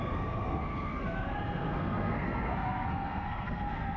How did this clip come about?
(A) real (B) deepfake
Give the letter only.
B